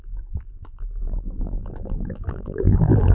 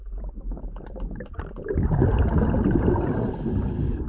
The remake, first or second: first